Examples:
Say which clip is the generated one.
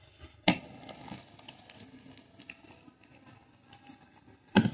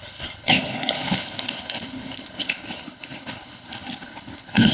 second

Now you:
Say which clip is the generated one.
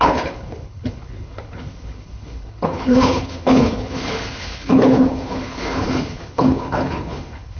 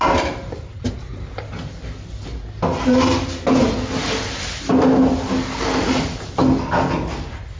first